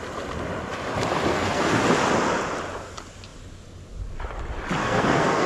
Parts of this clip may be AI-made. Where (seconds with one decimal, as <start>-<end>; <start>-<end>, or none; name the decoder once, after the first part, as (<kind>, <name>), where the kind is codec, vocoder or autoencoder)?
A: 1.3-1.8 (codec, SNAC); 4.8-5.5